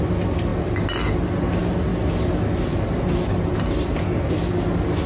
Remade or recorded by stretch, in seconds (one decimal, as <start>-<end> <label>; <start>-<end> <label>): 0.0-5.1 recorded